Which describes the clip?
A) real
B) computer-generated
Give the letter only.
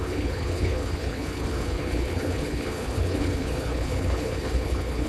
B